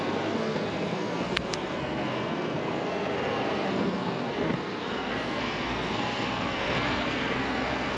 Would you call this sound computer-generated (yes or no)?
yes